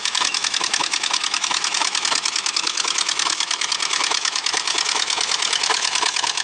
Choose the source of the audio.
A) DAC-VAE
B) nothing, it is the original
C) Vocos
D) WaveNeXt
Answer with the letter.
A